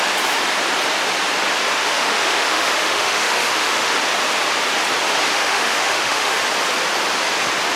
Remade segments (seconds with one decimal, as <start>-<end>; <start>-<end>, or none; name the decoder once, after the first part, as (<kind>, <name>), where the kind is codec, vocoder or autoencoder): 1.8-3.9 (autoencoder, DAC-VAE); 5.3-6.4